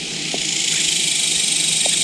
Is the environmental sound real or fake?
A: real